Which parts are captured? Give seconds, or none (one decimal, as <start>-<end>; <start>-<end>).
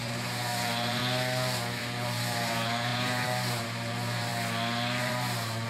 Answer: 1.0-1.8; 4.3-5.0